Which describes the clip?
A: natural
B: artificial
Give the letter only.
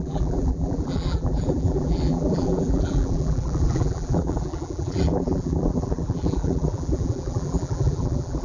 B